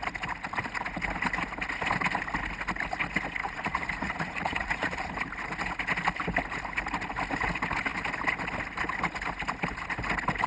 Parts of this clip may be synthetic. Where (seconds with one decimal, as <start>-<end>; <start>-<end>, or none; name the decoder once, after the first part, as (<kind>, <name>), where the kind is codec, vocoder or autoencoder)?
3.4-5.1 (vocoder, Vocos)